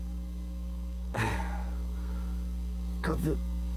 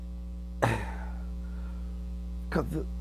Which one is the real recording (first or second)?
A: second